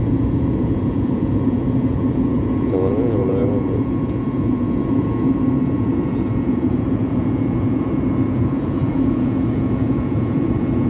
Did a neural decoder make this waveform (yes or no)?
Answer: yes